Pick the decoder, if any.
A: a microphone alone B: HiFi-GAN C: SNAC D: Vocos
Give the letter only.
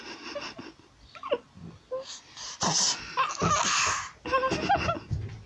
A